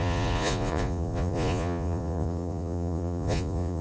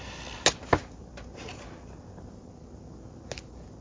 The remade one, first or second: first